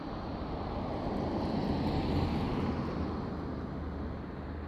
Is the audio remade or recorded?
recorded